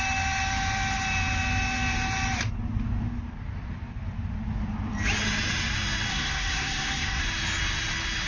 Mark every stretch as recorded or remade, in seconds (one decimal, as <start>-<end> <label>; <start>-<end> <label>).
0.0-6.1 recorded; 6.1-7.2 remade; 7.2-8.3 recorded